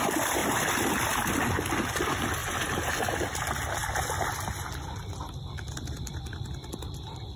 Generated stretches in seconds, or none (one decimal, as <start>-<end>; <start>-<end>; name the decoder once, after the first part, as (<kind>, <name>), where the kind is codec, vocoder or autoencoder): 2.4-2.9 (vocoder, BigVGAN v2)